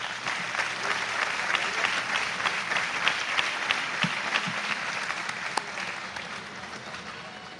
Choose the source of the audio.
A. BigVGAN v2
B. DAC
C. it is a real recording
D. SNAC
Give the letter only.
C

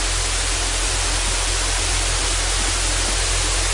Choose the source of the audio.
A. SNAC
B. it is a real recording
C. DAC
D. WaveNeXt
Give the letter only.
B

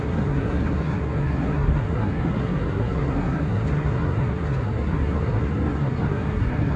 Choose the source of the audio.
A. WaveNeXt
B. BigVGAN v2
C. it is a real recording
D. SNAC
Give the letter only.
D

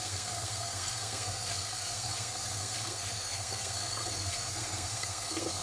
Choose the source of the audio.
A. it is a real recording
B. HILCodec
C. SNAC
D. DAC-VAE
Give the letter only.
C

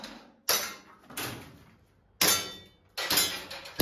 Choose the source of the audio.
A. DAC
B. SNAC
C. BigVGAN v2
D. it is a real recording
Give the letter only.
D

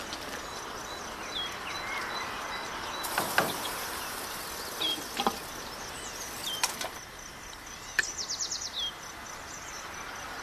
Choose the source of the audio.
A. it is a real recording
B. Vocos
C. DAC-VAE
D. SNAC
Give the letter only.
A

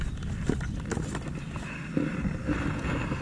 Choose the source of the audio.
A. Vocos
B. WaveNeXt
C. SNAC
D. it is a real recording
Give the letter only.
D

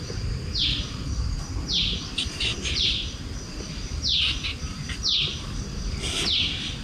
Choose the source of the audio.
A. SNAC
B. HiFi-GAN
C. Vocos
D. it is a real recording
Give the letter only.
D